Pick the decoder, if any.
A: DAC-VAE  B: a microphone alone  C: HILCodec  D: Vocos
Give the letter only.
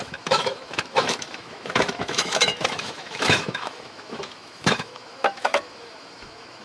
A